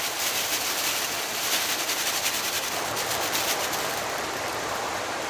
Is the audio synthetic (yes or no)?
yes